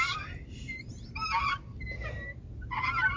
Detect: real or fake real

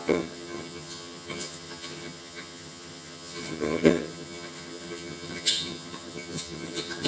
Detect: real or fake fake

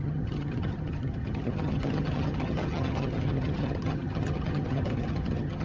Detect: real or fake fake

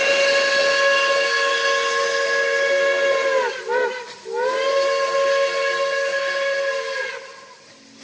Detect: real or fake real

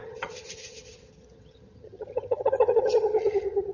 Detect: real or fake fake